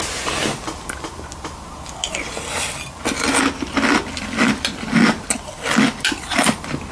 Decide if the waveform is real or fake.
real